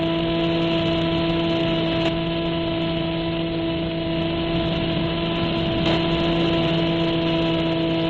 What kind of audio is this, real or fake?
real